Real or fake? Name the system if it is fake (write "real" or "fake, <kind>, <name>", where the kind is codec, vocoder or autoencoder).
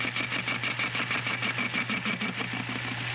real